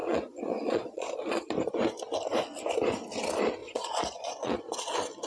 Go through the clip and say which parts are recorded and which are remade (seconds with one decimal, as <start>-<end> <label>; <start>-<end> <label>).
0.0-1.5 remade; 1.5-3.6 recorded; 3.6-4.6 remade; 4.6-5.3 recorded